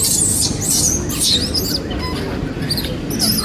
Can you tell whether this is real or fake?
real